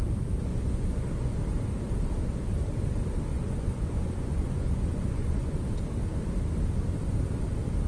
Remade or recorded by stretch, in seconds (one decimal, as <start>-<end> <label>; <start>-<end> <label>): 0.0-0.5 recorded; 0.5-1.3 remade; 1.3-3.3 recorded; 3.3-5.6 remade; 5.6-7.9 recorded